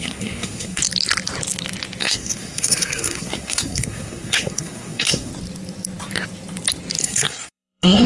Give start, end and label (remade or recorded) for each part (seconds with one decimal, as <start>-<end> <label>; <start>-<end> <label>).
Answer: 0.0-0.8 remade; 0.8-2.0 recorded; 2.0-5.3 remade; 5.3-7.0 recorded; 7.0-8.1 remade